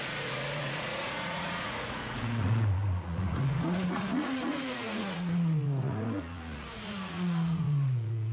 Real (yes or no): no